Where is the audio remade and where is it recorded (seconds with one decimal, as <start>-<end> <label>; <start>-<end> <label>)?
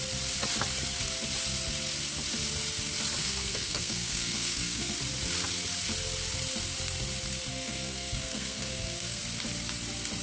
0.0-3.2 recorded; 3.2-4.9 remade; 4.9-7.5 recorded; 7.5-9.2 remade; 9.2-10.2 recorded